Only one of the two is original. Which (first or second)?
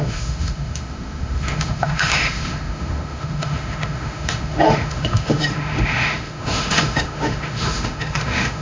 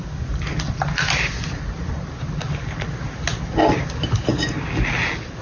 second